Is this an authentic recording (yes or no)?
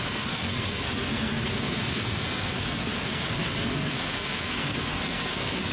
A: no